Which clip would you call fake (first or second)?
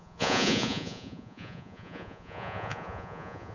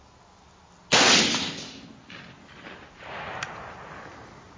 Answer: first